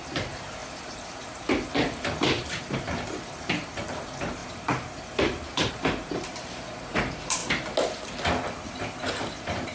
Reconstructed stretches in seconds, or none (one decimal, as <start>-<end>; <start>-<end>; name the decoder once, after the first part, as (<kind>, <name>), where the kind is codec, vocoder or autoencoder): 0.0-7.4 (vocoder, BigVGAN v2); 8.7-9.7